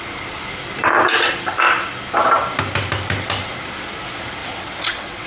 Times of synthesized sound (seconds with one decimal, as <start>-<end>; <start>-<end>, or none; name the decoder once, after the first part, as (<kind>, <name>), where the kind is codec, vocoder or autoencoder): 4.4-5.3 (vocoder, WaveNeXt)